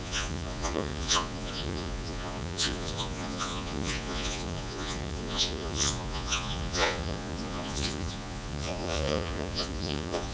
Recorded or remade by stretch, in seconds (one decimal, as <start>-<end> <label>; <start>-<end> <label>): 0.0-10.3 remade